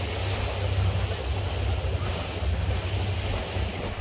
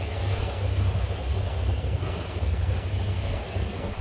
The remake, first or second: second